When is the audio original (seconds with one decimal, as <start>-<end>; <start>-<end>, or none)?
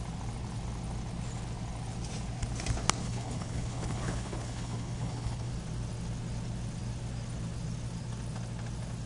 0.0-3.0; 5.5-9.1